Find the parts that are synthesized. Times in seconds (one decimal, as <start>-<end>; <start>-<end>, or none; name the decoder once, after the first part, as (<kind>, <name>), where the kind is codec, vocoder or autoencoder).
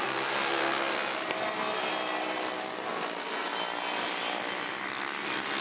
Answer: none